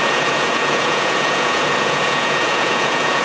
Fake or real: fake